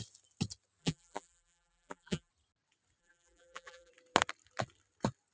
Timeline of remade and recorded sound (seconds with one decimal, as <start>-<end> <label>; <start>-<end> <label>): 0.0-0.8 recorded; 0.8-2.3 remade; 2.3-3.0 recorded; 3.0-3.9 remade; 3.9-5.3 recorded